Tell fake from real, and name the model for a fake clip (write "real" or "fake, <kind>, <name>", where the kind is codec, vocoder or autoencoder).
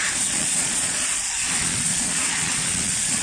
fake, vocoder, Vocos